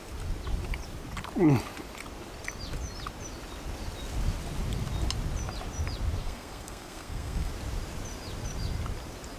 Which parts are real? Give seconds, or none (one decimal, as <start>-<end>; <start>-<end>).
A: 0.0-6.2; 7.5-9.4